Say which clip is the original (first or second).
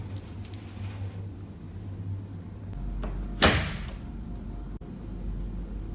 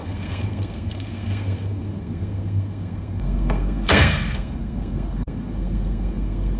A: first